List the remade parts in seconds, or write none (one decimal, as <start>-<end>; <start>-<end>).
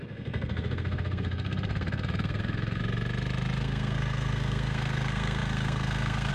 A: 0.0-2.8; 3.6-6.3